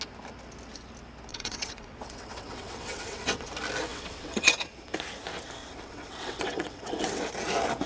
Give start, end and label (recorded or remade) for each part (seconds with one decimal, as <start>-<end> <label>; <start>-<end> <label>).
0.0-1.3 recorded; 1.3-3.5 remade; 3.5-3.9 recorded; 3.9-4.5 remade; 4.5-5.6 recorded; 5.6-7.2 remade; 7.2-7.9 recorded